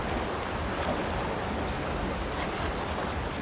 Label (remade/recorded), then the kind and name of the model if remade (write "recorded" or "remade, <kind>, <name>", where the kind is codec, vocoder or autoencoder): recorded